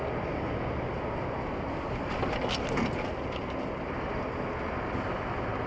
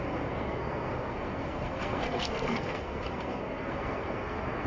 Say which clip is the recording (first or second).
first